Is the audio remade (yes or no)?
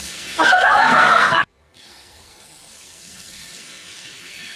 yes